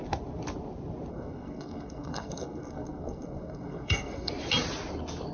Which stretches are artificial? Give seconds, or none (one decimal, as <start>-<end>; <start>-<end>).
1.1-4.3